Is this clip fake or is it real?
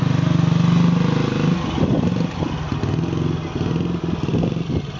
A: real